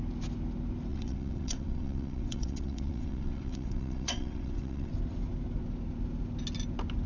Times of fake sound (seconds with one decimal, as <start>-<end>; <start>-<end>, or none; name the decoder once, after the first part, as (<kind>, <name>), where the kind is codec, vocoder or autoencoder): 0.9-4.9 (vocoder, WaveNeXt)